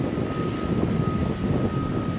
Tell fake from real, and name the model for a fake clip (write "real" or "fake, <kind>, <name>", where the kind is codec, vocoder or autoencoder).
real